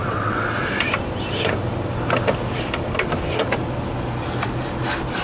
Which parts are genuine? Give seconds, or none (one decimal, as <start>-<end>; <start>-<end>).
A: 0.6-5.2